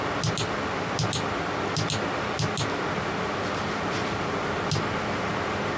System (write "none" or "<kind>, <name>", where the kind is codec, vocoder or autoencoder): none